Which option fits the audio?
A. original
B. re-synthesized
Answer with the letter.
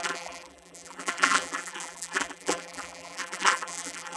B